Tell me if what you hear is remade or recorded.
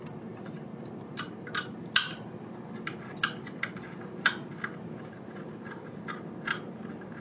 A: recorded